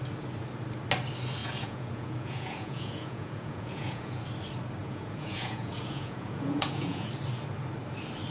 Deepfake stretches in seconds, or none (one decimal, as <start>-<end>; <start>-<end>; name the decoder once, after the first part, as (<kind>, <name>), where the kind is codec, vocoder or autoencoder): 1.4-4.2 (vocoder, Vocos); 4.8-7.1